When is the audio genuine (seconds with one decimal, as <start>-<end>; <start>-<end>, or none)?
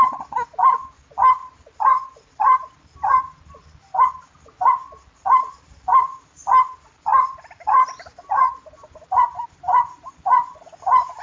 0.0-11.2